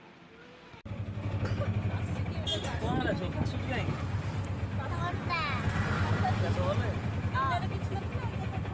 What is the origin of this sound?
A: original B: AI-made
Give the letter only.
A